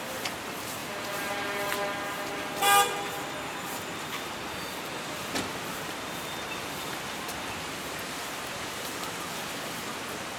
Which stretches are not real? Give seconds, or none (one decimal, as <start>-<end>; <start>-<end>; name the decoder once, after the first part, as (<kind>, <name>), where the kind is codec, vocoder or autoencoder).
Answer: none